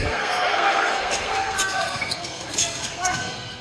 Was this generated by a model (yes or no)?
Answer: yes